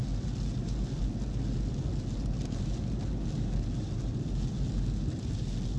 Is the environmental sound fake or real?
real